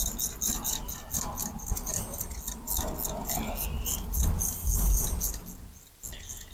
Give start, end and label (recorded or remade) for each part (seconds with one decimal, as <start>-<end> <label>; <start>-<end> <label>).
0.0-6.5 recorded